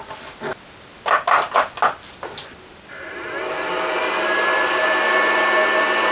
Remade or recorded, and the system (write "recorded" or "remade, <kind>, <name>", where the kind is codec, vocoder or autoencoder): recorded